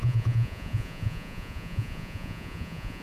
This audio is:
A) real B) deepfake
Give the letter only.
B